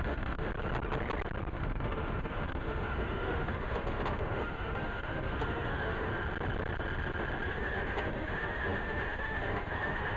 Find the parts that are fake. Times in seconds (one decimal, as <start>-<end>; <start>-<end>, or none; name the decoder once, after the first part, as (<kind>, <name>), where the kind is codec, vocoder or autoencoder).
0.0-0.5 (autoencoder, DAC-VAE); 1.5-6.1; 7.5-10.2